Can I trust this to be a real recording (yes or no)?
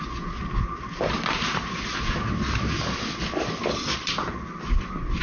yes